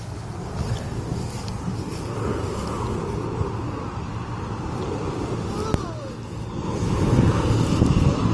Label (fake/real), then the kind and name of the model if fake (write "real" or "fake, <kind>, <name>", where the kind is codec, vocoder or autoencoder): real